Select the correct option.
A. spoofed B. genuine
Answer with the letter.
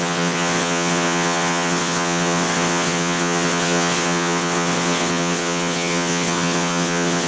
A